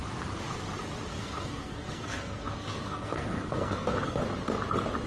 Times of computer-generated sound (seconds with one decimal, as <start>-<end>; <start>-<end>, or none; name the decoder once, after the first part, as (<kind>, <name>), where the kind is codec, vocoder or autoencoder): 1.1-4.2 (codec, SNAC)